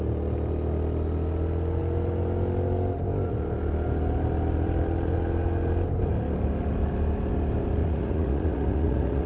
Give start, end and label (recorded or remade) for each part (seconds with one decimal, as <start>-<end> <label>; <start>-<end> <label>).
0.0-7.8 recorded; 7.8-9.3 remade

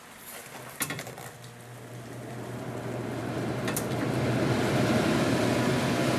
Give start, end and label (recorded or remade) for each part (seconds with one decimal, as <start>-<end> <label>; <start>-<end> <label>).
0.0-6.2 recorded

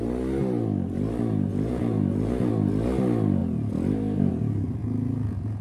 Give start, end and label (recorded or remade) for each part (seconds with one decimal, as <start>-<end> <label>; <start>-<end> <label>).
0.0-1.5 recorded; 1.5-2.5 remade; 2.5-4.8 recorded; 4.8-5.6 remade

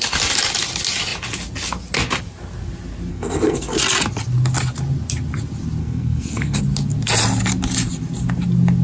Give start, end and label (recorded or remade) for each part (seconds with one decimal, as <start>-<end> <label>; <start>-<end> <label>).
0.0-3.1 recorded; 3.1-3.8 remade; 3.8-5.8 recorded; 5.8-6.6 remade; 6.6-8.8 recorded

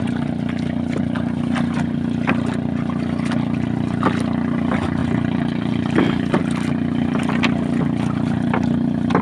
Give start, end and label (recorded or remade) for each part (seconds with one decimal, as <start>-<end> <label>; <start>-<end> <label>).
0.0-9.2 recorded

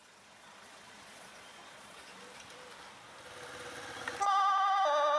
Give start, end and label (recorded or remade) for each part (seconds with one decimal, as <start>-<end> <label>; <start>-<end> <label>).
0.0-2.1 remade; 2.1-5.2 recorded

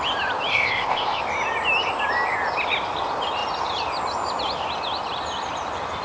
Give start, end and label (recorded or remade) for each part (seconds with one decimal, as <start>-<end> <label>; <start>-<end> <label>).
0.0-0.5 recorded; 0.5-1.2 remade; 1.2-6.0 recorded

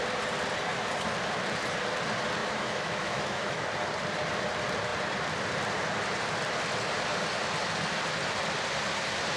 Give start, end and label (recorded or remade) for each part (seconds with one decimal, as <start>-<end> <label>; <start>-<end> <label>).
0.0-2.4 recorded; 2.4-3.6 remade; 3.6-9.4 recorded